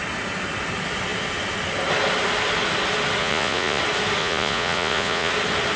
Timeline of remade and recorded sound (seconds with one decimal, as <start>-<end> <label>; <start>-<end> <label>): 0.0-3.2 recorded; 3.2-3.8 remade; 3.8-4.2 recorded; 4.2-5.3 remade; 5.3-5.8 recorded

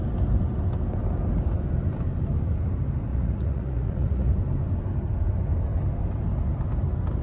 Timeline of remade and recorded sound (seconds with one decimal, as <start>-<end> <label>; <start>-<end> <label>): 0.0-3.1 recorded; 3.1-4.3 remade; 4.3-7.2 recorded